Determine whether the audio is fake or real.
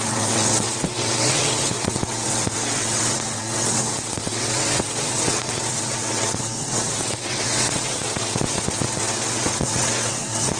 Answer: fake